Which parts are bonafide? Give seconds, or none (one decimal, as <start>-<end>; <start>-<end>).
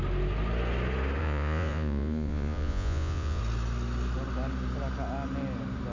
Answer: 0.0-1.2; 3.4-5.9